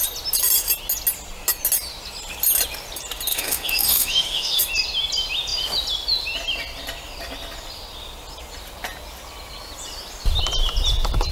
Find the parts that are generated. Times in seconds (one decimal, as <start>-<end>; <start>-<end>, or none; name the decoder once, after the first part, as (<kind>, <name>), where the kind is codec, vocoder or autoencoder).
3.3-4.6 (autoencoder, DAC-VAE)